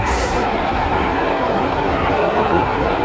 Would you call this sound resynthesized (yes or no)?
yes